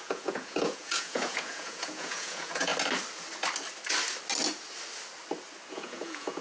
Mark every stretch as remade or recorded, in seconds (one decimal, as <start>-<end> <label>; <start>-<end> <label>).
0.0-2.7 remade; 2.7-5.7 recorded; 5.7-6.4 remade